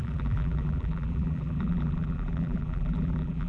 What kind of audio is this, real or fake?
fake